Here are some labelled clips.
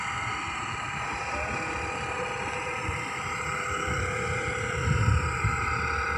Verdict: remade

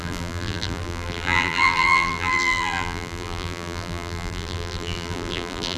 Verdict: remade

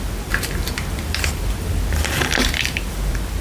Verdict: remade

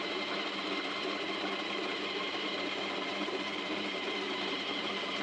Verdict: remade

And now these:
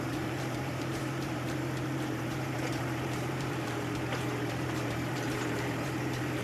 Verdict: remade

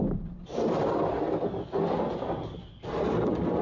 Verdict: remade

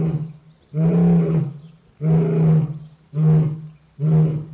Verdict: recorded